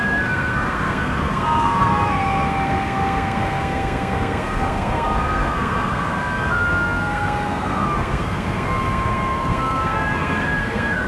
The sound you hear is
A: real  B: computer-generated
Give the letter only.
B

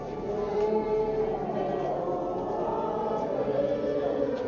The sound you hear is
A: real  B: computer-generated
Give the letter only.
A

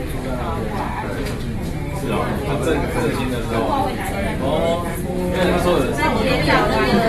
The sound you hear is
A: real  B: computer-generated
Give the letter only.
A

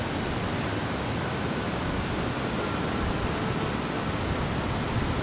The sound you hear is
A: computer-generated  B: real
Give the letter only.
B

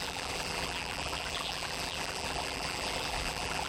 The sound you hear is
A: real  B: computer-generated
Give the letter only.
B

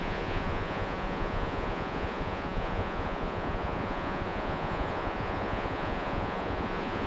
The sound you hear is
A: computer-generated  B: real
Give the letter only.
A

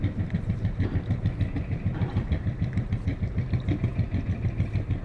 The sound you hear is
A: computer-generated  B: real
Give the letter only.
B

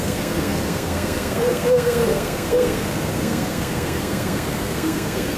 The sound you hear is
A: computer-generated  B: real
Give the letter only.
A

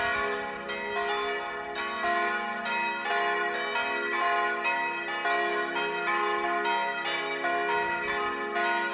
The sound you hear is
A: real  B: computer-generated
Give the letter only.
A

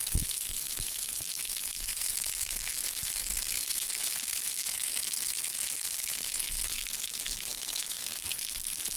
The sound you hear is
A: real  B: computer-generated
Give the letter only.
B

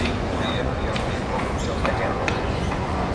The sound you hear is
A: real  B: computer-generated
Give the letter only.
B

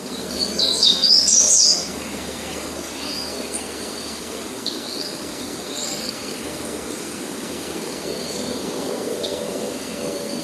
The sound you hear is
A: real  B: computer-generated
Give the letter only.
B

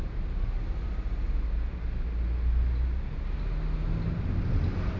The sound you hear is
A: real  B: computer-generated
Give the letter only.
A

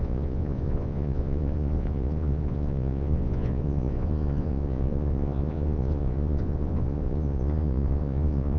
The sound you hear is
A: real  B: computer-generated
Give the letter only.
B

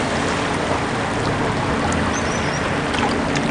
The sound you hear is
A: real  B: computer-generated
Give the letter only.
A